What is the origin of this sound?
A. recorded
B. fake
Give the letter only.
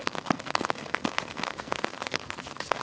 B